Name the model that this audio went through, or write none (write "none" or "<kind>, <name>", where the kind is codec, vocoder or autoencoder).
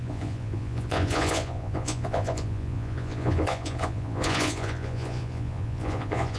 vocoder, Vocos